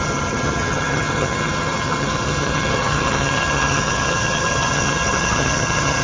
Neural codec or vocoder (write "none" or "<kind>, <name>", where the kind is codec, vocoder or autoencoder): vocoder, HiFi-GAN